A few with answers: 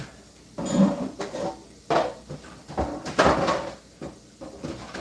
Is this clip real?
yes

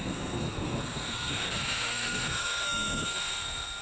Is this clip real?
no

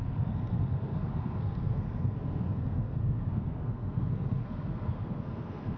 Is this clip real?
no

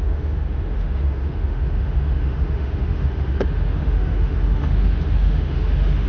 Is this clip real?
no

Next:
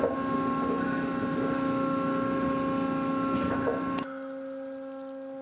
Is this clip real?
yes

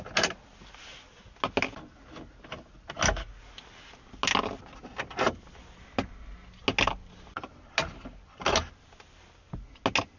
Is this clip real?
yes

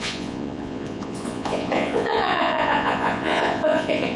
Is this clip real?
no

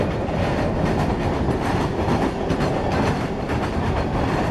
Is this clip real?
yes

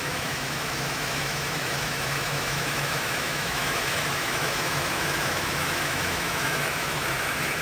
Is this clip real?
no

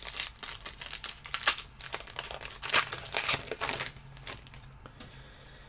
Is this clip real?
yes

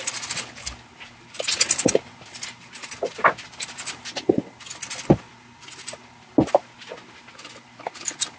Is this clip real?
yes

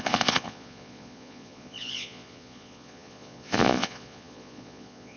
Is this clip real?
no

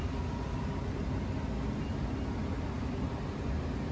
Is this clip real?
yes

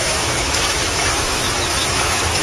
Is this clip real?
no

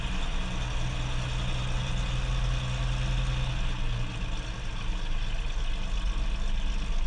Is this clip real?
yes